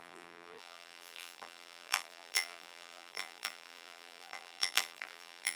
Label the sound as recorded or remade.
remade